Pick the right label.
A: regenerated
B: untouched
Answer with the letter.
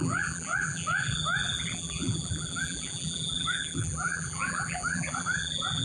A